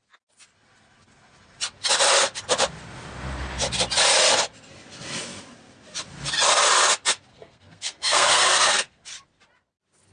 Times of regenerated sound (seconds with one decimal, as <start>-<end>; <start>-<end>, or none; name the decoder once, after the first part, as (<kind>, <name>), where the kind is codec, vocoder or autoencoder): 7.3-9.0 (codec, SNAC)